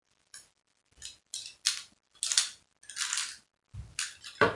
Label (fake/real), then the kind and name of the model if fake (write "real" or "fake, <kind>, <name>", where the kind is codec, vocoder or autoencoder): real